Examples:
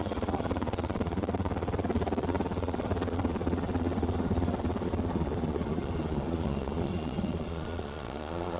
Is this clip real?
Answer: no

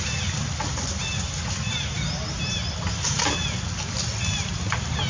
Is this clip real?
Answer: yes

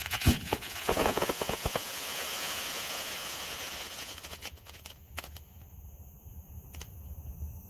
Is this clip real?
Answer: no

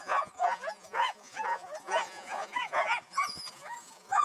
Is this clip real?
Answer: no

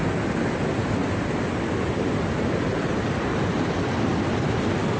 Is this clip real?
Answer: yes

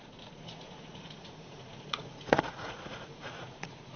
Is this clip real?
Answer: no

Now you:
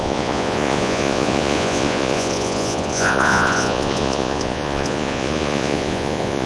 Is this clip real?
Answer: no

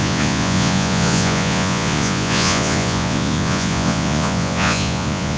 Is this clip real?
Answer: no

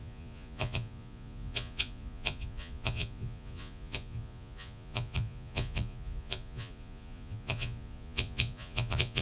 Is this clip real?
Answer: no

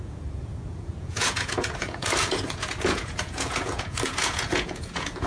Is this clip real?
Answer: no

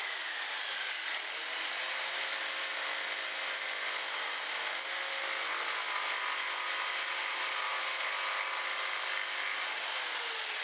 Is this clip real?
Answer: yes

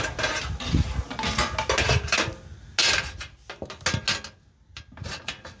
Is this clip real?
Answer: yes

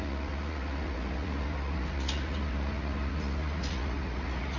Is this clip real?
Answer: no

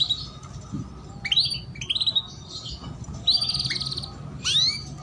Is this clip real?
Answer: yes